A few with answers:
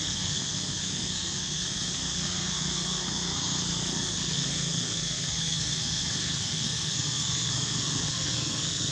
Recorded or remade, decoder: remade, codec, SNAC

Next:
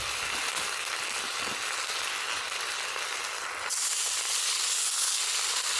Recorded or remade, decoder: recorded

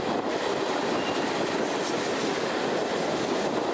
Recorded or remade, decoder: recorded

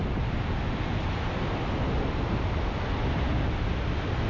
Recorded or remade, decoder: recorded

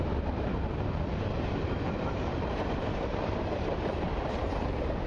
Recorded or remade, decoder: remade, vocoder, BigVGAN v2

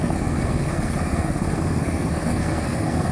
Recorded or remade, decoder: remade, codec, SNAC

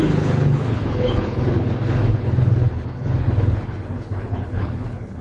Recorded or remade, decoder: remade, codec, HILCodec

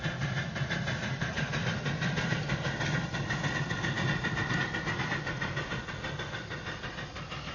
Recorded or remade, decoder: recorded